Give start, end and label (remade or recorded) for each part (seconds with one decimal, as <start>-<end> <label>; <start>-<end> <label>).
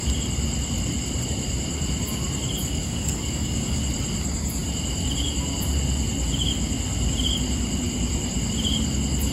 0.0-2.6 recorded; 2.6-3.8 remade; 3.8-9.3 recorded